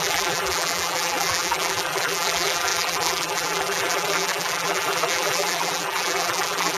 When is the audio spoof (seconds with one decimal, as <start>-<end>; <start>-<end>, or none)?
0.0-6.8